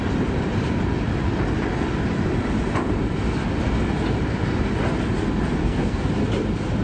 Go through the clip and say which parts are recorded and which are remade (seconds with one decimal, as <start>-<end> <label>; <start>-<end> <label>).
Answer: 0.0-5.6 recorded; 5.6-6.1 remade; 6.1-6.8 recorded